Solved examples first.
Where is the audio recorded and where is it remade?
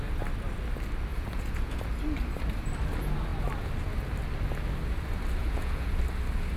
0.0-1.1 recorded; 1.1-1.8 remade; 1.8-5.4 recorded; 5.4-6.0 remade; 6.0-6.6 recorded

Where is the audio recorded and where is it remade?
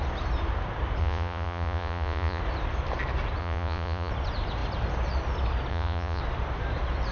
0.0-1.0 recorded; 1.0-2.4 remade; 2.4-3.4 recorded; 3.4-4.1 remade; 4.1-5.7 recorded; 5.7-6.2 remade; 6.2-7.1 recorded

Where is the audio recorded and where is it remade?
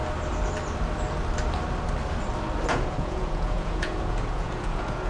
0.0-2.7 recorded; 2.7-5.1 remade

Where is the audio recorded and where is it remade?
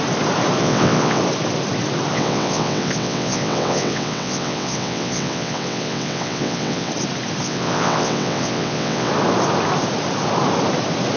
0.0-0.6 recorded; 0.6-1.2 remade; 1.2-2.1 recorded; 2.1-6.9 remade; 6.9-7.4 recorded; 7.4-9.1 remade; 9.1-11.2 recorded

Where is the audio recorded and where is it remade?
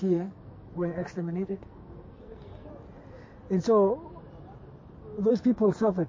0.0-2.7 remade; 2.7-5.3 recorded; 5.3-6.1 remade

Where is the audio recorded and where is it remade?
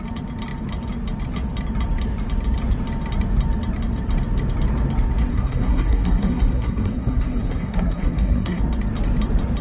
0.0-5.3 recorded; 5.3-8.6 remade; 8.6-9.6 recorded